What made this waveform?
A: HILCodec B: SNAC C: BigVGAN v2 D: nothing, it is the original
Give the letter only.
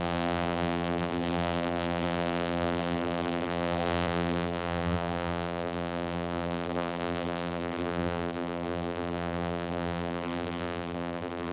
C